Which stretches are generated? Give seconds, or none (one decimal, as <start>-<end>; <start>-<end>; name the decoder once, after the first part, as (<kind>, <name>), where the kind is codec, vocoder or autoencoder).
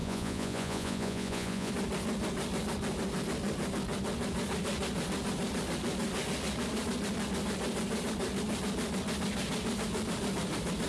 0.0-1.7 (vocoder, Vocos)